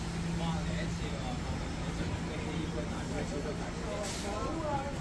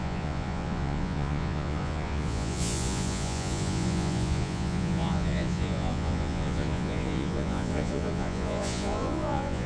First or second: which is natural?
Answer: first